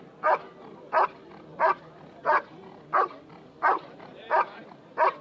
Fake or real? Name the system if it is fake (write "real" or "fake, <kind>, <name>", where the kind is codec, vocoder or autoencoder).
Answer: real